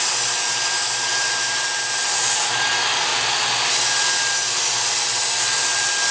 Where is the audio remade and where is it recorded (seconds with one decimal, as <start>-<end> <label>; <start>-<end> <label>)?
0.0-1.1 recorded; 1.1-2.7 remade; 2.7-6.1 recorded